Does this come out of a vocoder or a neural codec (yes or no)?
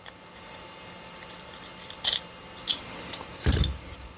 no